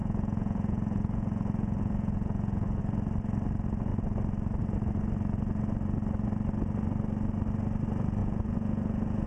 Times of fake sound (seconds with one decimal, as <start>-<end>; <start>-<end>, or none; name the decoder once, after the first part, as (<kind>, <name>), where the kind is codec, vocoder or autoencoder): 0.0-2.8 (vocoder, Vocos); 8.2-9.3